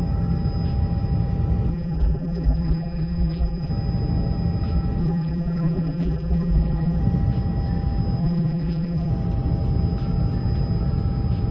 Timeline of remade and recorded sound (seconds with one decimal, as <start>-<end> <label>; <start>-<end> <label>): 0.0-1.7 recorded; 1.7-3.7 remade; 3.7-5.0 recorded; 5.0-7.0 remade; 7.0-8.2 recorded; 8.2-9.1 remade; 9.1-11.5 recorded